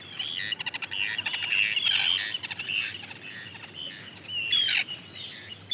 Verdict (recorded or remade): recorded